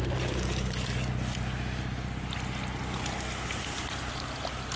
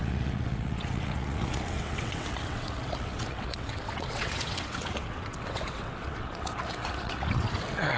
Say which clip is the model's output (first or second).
second